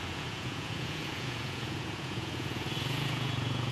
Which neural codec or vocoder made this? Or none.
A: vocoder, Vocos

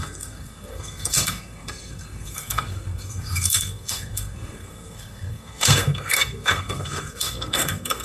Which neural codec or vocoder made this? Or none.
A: codec, SNAC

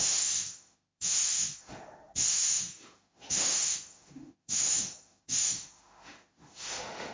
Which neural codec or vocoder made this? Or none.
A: autoencoder, DAC-VAE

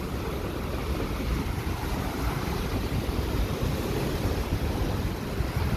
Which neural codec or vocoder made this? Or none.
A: none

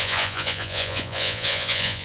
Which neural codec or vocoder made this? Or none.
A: vocoder, Vocos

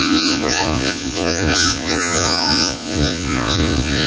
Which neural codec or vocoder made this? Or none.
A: vocoder, Vocos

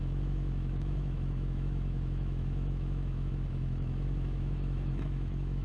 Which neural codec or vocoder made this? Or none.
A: autoencoder, DAC-VAE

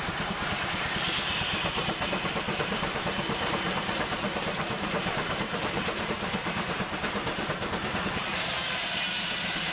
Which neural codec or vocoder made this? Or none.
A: vocoder, BigVGAN v2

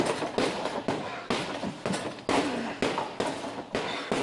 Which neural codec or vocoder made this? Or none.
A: none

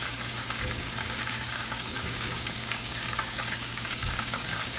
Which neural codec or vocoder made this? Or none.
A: codec, DAC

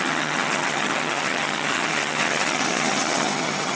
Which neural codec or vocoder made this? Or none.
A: vocoder, HiFi-GAN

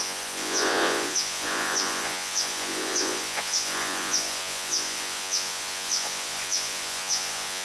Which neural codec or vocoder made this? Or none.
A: vocoder, Vocos